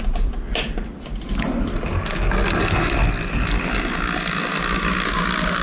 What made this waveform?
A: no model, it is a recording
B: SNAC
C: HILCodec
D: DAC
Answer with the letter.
A